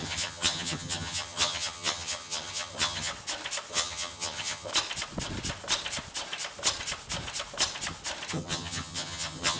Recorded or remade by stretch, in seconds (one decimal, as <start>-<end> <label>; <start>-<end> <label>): 0.0-3.1 remade; 3.1-3.7 recorded; 3.7-4.7 remade; 4.7-8.3 recorded; 8.3-9.6 remade